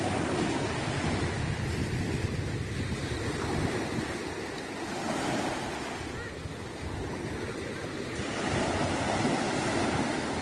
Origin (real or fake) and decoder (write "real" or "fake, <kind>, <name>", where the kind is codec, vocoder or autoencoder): real